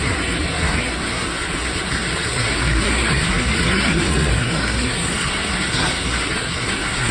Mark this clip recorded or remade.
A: remade